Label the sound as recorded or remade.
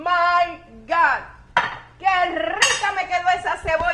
recorded